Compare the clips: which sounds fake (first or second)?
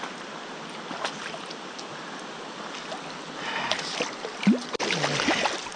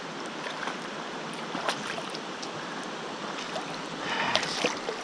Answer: second